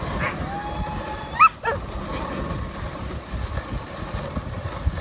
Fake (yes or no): no